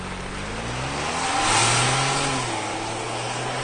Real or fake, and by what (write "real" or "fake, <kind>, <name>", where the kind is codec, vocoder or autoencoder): real